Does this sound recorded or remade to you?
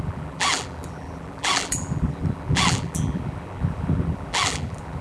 remade